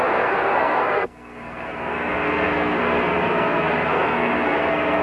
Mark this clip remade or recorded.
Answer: remade